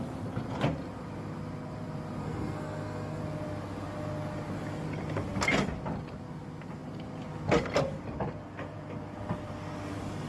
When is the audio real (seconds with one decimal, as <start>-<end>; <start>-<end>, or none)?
0.0-2.2; 3.2-10.3